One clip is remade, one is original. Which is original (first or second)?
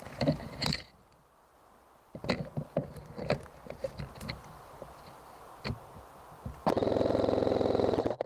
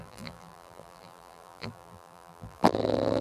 first